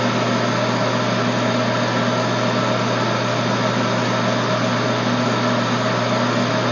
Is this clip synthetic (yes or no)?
no